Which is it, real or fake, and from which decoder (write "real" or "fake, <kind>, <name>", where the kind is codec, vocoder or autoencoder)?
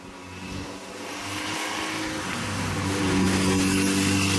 real